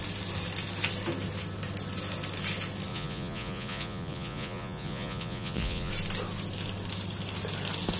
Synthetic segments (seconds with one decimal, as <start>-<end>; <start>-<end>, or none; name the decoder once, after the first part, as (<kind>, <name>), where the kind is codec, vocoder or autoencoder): 2.9-5.9 (vocoder, Vocos)